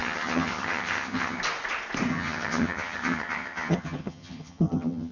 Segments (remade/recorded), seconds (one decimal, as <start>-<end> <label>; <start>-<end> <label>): 0.0-1.4 remade; 1.4-2.1 recorded; 2.1-5.1 remade